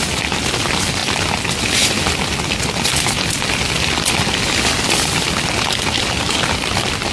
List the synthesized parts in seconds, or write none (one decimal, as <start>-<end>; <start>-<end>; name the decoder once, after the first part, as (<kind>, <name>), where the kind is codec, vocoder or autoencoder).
none

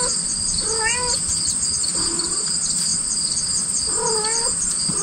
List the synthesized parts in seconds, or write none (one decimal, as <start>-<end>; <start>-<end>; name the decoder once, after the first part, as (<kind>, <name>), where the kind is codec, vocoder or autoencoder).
none

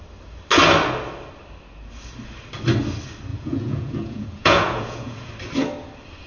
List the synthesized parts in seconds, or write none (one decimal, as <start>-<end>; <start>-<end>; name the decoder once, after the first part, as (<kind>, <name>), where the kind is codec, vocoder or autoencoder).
3.3-5.3 (vocoder, Vocos)

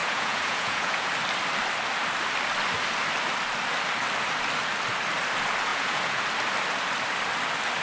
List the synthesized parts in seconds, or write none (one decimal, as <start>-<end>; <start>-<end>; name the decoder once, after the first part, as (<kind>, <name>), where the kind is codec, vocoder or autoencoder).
0.0-1.1 (vocoder, Vocos); 5.7-6.2

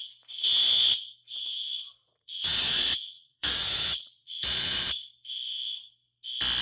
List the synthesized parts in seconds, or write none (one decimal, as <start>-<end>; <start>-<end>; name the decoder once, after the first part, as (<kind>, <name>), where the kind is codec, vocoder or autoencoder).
2.0-4.9 (vocoder, Vocos)

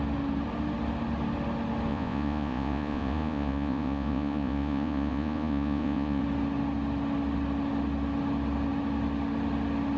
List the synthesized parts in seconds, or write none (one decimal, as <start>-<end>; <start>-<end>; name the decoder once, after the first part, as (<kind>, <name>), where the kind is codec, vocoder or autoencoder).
1.9-6.2 (vocoder, Vocos)

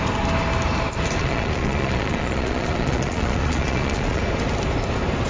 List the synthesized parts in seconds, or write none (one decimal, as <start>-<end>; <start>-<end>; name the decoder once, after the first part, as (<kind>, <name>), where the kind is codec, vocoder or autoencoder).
1.2-4.2 (vocoder, Vocos)

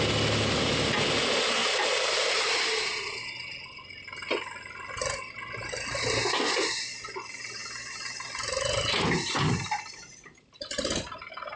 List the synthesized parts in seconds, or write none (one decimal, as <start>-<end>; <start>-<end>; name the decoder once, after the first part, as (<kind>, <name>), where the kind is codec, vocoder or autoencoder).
none